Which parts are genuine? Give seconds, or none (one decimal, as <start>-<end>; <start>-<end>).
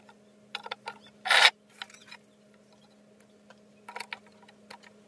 0.0-5.1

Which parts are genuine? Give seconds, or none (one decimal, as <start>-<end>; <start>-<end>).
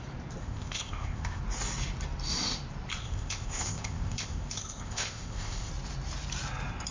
0.0-0.4; 1.4-3.0; 5.7-6.9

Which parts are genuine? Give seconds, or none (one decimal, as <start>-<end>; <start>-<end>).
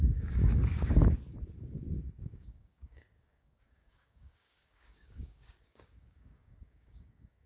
1.0-2.2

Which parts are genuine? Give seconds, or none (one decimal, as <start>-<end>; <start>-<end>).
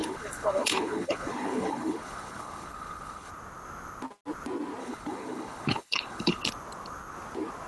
3.3-4.8; 6.4-7.7